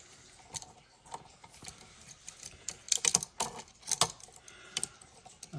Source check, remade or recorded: recorded